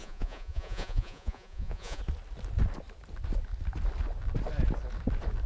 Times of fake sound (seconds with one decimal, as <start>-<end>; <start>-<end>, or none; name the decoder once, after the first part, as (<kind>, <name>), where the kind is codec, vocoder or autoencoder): 0.0-2.0 (vocoder, Vocos)